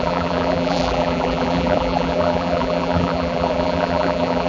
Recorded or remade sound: remade